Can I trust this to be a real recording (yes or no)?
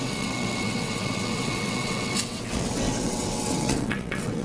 no